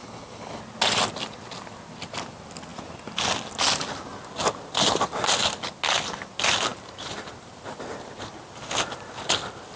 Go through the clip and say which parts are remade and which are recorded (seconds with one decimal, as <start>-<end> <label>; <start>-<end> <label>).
0.0-0.6 remade; 0.6-9.8 recorded